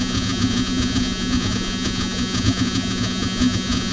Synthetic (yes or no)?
yes